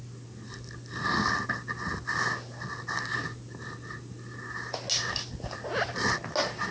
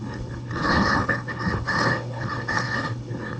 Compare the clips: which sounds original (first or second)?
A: first